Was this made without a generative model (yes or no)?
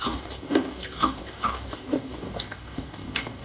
no